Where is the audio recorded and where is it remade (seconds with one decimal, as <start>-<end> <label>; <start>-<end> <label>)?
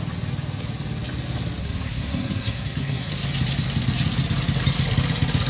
0.0-1.6 recorded; 1.6-3.1 remade; 3.1-5.5 recorded